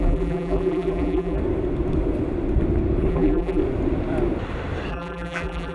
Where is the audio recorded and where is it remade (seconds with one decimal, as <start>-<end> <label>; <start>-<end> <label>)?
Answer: 0.0-1.4 remade; 1.4-3.1 recorded; 3.1-3.6 remade; 3.6-4.9 recorded; 4.9-5.7 remade